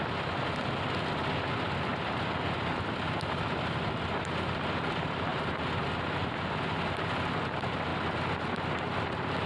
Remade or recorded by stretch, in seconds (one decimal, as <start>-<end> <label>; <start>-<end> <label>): 0.0-1.9 recorded; 1.9-2.4 remade; 2.4-5.3 recorded; 5.3-5.8 remade; 5.8-9.5 recorded